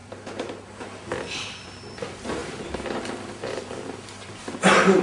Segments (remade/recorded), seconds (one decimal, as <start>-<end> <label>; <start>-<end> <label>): 0.0-1.0 recorded; 1.0-5.0 remade